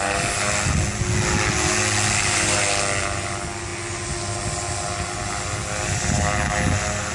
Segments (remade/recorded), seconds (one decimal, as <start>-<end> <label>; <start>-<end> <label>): 0.0-7.1 recorded